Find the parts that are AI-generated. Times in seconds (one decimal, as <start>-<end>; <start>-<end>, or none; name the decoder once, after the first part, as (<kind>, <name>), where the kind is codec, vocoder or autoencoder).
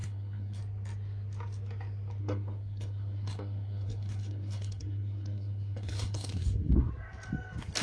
0.0-0.6 (codec, SNAC); 2.2-6.9